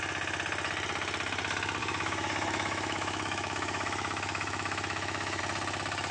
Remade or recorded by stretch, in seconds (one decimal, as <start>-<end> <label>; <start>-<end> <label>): 0.0-1.8 recorded; 1.8-5.4 remade; 5.4-6.1 recorded